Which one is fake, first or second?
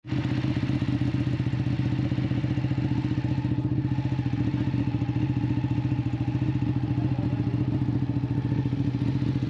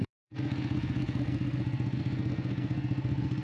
second